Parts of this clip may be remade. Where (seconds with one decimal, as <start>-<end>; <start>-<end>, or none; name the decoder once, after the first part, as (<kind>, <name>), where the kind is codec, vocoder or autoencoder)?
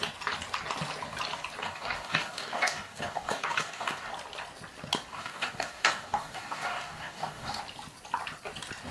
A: 1.6-4.1 (codec, DAC); 5.1-7.6